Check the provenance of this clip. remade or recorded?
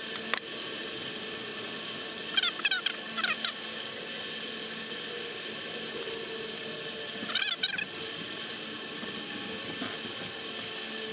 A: recorded